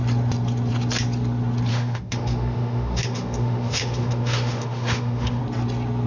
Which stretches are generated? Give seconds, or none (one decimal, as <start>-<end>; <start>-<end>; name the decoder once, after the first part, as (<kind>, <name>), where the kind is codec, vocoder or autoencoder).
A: 1.7-5.4 (autoencoder, DAC-VAE)